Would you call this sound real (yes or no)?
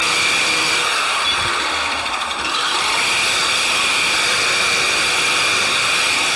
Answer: no